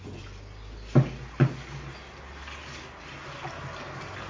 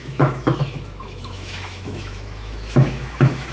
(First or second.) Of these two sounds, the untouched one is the first